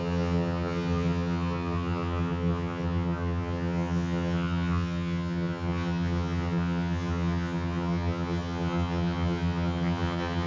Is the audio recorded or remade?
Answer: remade